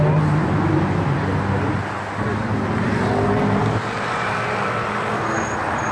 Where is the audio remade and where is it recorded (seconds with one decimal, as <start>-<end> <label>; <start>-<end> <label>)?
0.0-5.9 recorded